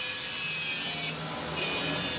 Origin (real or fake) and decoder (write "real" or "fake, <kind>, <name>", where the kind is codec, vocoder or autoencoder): real